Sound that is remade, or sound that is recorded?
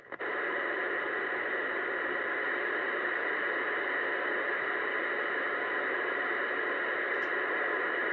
recorded